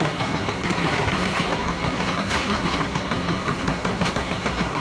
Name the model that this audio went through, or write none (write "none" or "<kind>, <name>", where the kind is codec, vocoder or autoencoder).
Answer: codec, SNAC